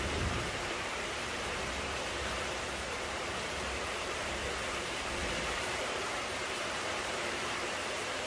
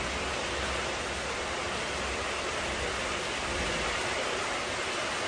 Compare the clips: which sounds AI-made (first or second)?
first